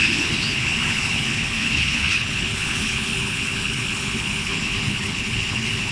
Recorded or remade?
remade